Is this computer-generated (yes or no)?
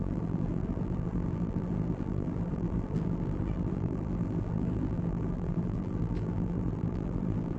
yes